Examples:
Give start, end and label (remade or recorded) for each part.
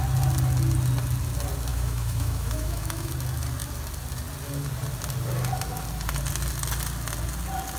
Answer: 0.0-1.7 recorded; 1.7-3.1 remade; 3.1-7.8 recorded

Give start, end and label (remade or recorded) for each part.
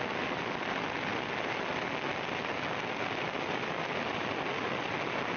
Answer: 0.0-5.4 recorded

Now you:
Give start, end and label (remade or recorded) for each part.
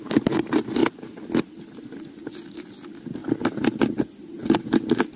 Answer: 0.0-5.2 recorded